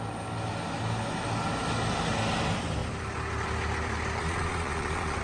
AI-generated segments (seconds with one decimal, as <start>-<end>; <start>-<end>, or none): 4.2-5.2